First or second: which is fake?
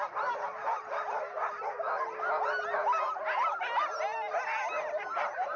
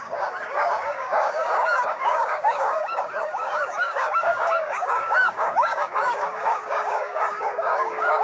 second